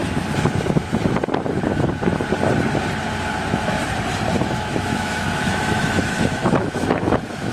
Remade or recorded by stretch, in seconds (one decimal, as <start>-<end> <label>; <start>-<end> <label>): 0.0-4.5 recorded; 4.5-7.5 remade